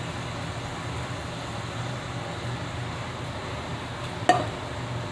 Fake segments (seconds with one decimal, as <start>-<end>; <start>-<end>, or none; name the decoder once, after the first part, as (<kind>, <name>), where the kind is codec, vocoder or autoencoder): 3.4-4.1 (vocoder, BigVGAN v2)